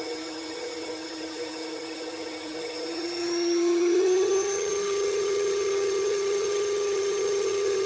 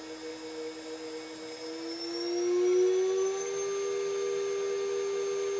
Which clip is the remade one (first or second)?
first